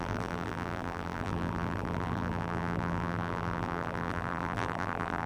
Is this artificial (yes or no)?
yes